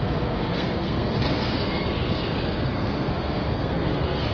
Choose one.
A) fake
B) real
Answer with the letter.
A